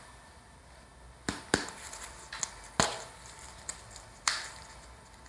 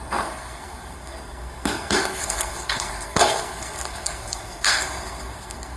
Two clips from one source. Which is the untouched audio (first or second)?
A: first